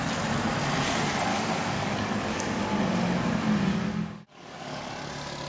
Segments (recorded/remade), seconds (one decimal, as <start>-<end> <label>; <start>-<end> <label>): 0.0-1.3 recorded; 1.3-2.6 remade; 2.6-3.7 recorded; 3.7-4.9 remade; 4.9-5.5 recorded